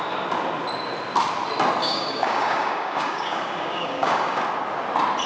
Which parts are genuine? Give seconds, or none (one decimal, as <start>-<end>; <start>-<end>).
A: 0.0-1.8; 4.4-5.3